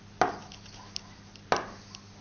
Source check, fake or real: real